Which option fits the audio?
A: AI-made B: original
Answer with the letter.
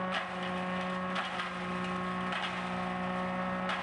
B